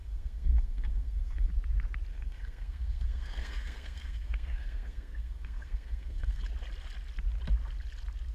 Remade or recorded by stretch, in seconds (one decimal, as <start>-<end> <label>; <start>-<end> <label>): 0.0-1.5 remade; 1.5-2.1 recorded; 2.1-6.4 remade; 6.4-8.3 recorded